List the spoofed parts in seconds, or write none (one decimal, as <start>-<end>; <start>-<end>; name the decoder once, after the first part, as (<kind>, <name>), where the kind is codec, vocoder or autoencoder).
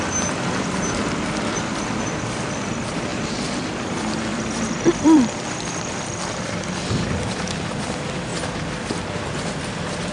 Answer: 0.0-8.3 (vocoder, BigVGAN v2)